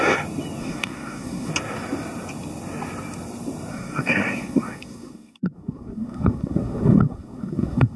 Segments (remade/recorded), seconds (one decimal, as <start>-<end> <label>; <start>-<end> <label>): 0.0-0.6 recorded; 0.6-1.5 remade; 1.5-3.7 recorded; 3.7-8.0 remade